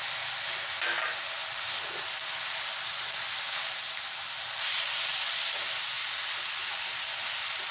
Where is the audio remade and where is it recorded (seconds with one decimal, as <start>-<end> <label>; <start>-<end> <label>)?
0.0-7.7 recorded

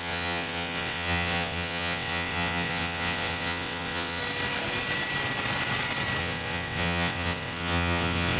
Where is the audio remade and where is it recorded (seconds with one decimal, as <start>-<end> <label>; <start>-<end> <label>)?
0.0-4.2 remade; 4.2-6.2 recorded; 6.2-8.4 remade

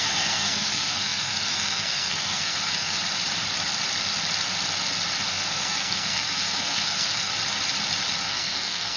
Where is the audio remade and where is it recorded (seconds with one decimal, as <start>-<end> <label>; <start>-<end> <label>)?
0.0-3.0 remade; 3.0-5.3 recorded; 5.3-7.3 remade; 7.3-8.2 recorded; 8.2-9.0 remade

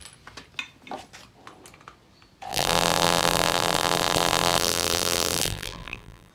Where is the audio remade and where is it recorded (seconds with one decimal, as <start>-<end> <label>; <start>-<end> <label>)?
0.0-2.5 recorded; 2.5-6.3 remade

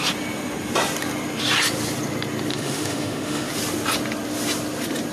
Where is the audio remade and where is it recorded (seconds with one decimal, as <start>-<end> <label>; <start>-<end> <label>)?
0.0-2.5 recorded; 2.5-3.5 remade; 3.5-5.1 recorded

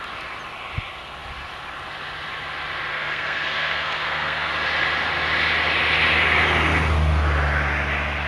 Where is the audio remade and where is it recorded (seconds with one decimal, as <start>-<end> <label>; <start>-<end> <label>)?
0.0-2.9 recorded; 2.9-4.5 remade; 4.5-8.3 recorded